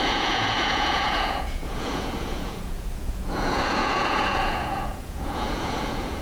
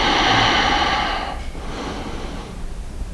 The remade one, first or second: first